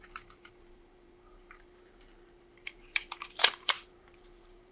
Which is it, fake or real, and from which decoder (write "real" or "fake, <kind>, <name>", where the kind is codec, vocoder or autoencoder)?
fake, vocoder, BigVGAN v2